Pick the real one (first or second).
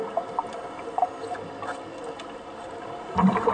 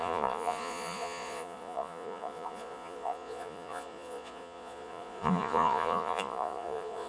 first